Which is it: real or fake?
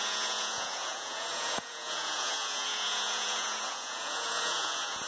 fake